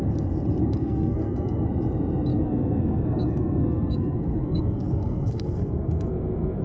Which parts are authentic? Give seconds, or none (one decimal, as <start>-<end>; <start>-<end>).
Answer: 0.0-0.6; 1.7-2.3